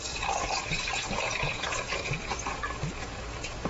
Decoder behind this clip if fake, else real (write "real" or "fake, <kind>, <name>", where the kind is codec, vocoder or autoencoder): fake, vocoder, Vocos